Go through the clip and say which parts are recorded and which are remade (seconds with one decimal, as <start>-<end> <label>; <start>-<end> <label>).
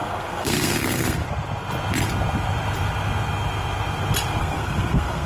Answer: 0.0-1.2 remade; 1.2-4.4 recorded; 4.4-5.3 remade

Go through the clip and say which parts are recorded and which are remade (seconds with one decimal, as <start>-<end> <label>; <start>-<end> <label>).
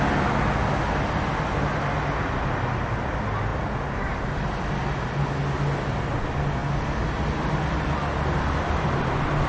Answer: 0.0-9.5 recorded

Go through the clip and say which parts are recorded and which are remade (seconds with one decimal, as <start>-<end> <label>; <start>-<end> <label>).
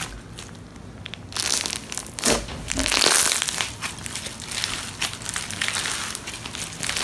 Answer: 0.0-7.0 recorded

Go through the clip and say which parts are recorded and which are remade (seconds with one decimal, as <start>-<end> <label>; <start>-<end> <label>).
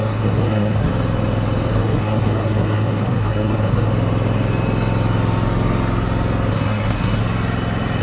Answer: 0.0-0.9 remade; 0.9-1.7 recorded; 1.7-3.9 remade; 3.9-6.5 recorded; 6.5-7.2 remade; 7.2-8.0 recorded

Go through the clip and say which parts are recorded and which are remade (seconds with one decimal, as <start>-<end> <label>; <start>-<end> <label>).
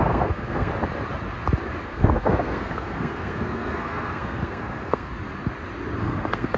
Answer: 0.0-0.7 remade; 0.7-1.8 recorded; 1.8-5.1 remade; 5.1-6.0 recorded; 6.0-6.6 remade